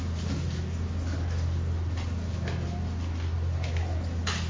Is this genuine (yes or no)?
yes